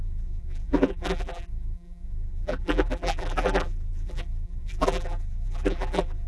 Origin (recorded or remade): remade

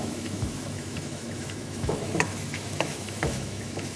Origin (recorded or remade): remade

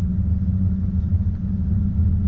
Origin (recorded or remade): recorded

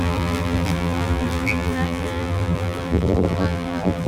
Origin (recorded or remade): remade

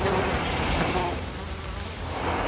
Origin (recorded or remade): recorded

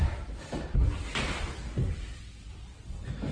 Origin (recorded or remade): remade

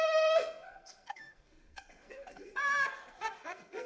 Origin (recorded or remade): remade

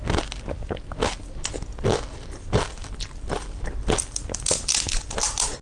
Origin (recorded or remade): recorded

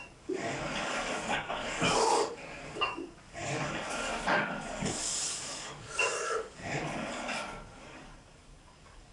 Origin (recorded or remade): remade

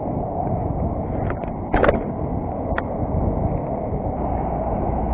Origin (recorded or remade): recorded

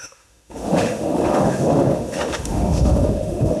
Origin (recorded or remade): remade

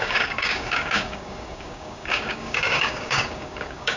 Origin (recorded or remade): remade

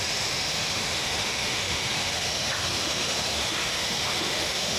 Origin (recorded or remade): remade